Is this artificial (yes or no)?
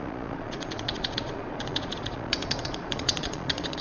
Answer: yes